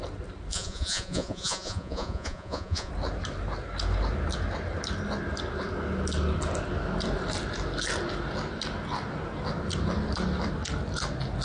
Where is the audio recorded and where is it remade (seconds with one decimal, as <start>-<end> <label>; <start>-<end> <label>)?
0.0-0.5 recorded; 0.5-2.9 remade; 2.9-11.4 recorded